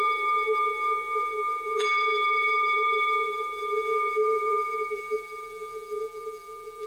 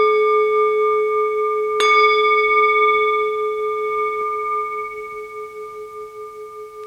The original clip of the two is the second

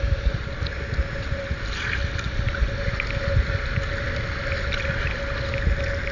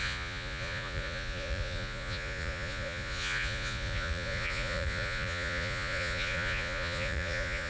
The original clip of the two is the first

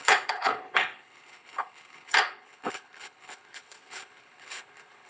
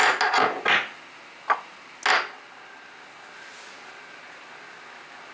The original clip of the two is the second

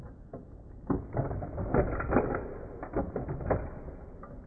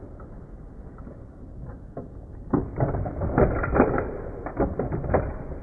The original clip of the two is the first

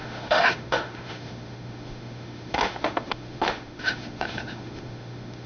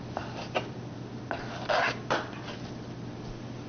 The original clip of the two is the second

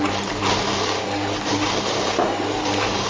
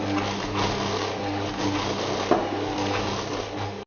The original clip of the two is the second